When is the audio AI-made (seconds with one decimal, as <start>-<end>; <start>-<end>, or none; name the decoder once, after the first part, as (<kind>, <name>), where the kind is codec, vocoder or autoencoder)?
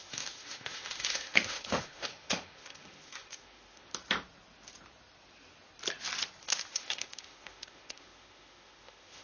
0.0-3.9 (autoencoder, DAC-VAE); 6.4-9.2